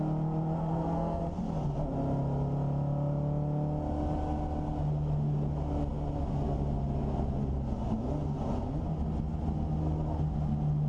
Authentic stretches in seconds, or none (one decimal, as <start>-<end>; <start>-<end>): 0.0-0.6; 1.2-10.9